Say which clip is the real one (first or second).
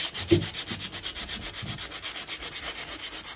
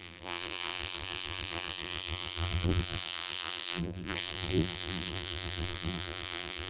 first